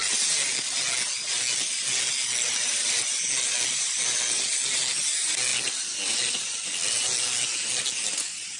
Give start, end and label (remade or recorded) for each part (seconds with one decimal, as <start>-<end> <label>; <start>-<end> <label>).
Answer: 0.0-8.6 recorded